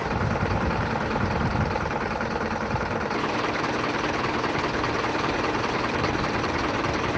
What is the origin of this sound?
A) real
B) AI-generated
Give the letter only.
B